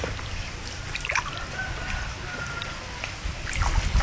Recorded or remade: recorded